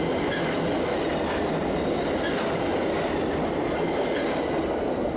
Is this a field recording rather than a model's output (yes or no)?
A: yes